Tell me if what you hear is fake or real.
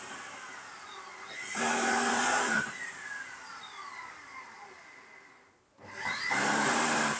fake